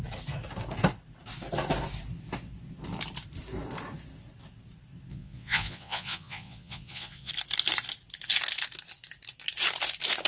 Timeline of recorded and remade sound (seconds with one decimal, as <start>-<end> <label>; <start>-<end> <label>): 0.0-5.1 recorded; 5.1-7.3 remade; 7.3-10.3 recorded